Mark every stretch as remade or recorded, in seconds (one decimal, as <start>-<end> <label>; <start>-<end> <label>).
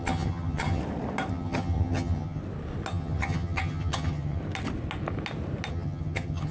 0.0-0.8 remade; 0.8-1.3 recorded; 1.3-2.4 remade; 2.4-2.9 recorded; 2.9-4.4 remade; 4.4-5.7 recorded; 5.7-6.5 remade